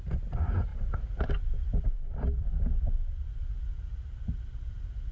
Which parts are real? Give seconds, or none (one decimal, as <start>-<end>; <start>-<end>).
0.0-0.7; 2.5-3.2; 4.5-5.1